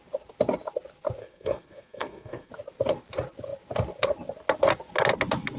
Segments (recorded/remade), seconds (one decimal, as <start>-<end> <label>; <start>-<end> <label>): 0.0-1.2 recorded; 1.2-2.5 remade; 2.5-5.6 recorded